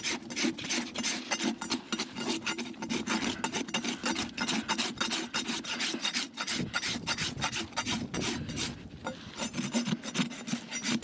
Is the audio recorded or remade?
recorded